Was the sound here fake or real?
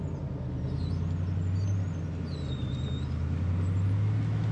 real